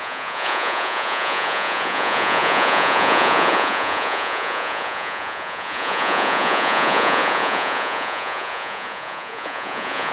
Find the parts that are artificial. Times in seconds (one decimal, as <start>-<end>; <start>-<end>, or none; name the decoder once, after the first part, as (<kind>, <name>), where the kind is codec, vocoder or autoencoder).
0.0-10.1 (vocoder, Vocos)